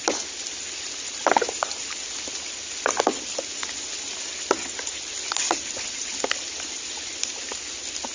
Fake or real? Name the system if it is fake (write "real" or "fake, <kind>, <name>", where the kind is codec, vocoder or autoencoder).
real